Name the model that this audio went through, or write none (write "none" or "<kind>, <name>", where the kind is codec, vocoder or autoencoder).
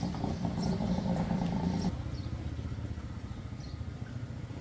vocoder, BigVGAN v2